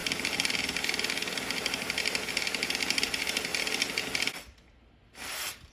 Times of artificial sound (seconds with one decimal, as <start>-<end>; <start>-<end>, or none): 0.0-3.5; 5.2-5.7